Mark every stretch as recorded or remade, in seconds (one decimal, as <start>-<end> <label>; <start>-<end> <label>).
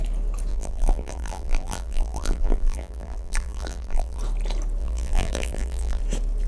0.0-0.5 recorded; 0.5-4.2 remade; 4.2-4.8 recorded; 4.8-6.0 remade; 6.0-6.5 recorded